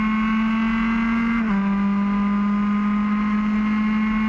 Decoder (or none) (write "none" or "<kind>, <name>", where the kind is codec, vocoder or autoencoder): none